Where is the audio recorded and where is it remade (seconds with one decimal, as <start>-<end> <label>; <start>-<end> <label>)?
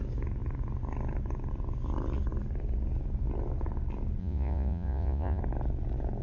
0.0-4.2 recorded; 4.2-5.4 remade; 5.4-6.2 recorded